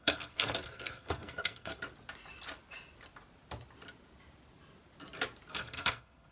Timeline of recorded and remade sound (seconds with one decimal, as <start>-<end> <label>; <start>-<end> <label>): 0.0-1.7 remade; 1.7-5.5 recorded; 5.5-6.3 remade